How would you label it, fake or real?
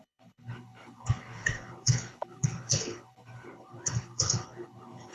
fake